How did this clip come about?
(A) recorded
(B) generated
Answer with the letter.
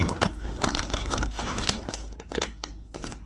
B